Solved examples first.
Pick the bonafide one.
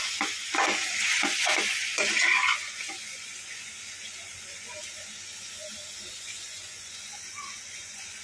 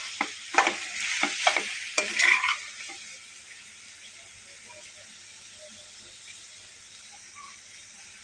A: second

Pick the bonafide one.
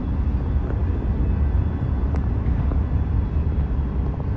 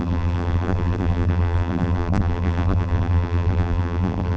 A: first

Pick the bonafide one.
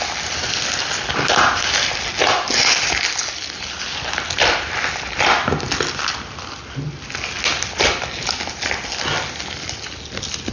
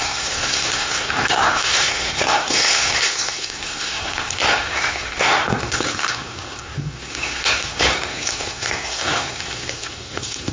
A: first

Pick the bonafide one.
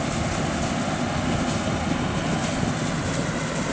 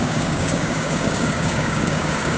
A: first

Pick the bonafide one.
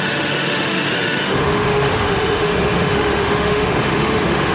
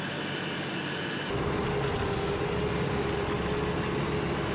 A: second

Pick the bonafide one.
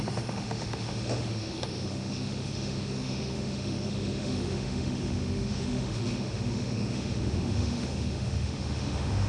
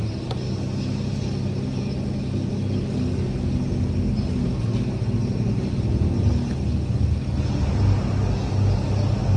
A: second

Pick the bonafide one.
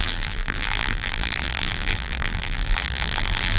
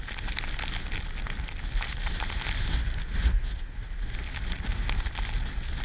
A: second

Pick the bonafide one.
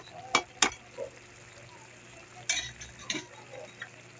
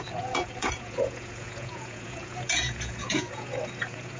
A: first